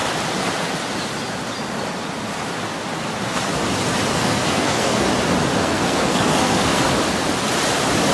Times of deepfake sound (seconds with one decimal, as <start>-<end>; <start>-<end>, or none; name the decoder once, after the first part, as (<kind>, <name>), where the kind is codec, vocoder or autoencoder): 4.1-5.1 (codec, SNAC); 5.6-6.9